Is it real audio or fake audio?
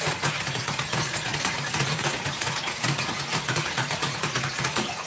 fake